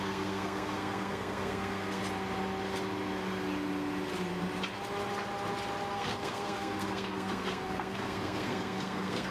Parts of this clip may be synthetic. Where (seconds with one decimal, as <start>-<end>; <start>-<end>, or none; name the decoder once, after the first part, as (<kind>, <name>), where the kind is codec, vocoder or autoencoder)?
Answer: 0.0-2.0 (codec, SNAC); 5.9-9.3